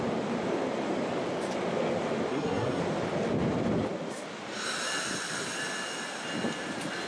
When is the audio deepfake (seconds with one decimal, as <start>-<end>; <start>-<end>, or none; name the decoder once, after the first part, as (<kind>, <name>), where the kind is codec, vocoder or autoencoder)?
2.3-2.8 (codec, SNAC)